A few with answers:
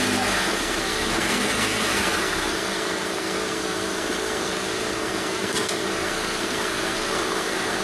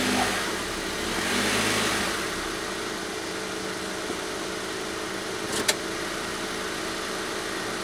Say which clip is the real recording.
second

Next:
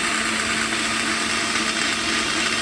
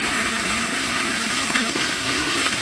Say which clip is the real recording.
first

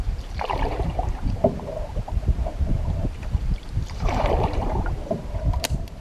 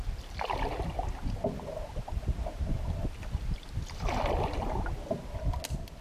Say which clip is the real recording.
second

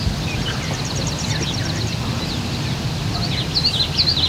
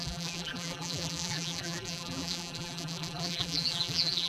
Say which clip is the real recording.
first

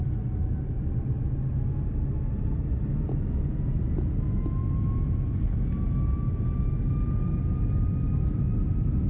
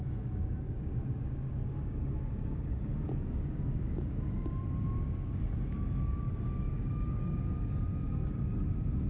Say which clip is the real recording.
first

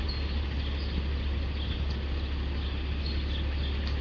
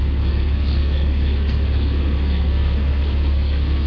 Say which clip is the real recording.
first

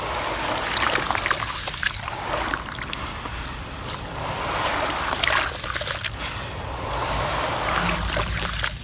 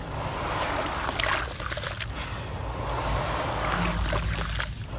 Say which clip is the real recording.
second